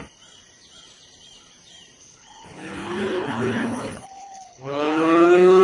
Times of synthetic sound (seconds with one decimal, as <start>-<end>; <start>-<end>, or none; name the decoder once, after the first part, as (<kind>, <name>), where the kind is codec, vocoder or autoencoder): 2.0-5.6 (codec, HILCodec)